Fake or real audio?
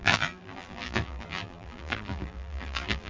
fake